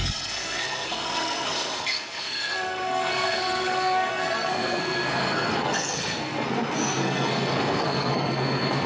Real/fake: fake